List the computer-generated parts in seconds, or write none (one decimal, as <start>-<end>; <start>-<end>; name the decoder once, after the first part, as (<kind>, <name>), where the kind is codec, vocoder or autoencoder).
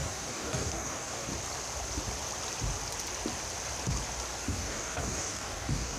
0.0-1.3 (codec, DAC); 4.3-6.0